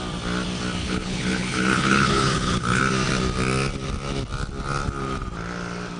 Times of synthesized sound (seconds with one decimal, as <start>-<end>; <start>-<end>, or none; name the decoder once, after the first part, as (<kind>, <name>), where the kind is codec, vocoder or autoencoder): 0.8-2.8 (codec, HILCodec)